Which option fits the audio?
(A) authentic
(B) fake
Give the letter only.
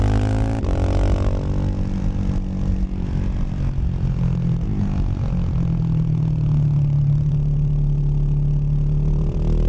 A